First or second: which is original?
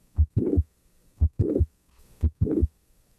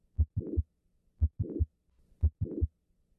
second